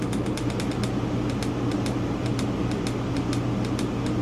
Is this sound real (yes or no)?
yes